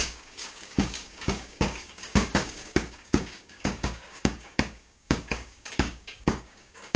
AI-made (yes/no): yes